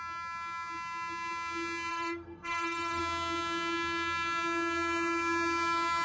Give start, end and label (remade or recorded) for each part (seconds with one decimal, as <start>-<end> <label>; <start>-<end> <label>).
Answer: 0.0-1.9 recorded; 1.9-3.0 remade; 3.0-6.0 recorded